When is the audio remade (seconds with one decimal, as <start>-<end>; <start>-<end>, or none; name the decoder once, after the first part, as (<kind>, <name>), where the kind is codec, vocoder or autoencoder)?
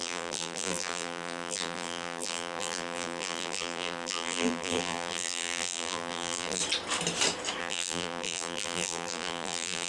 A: 0.0-6.6 (vocoder, BigVGAN v2); 7.6-9.9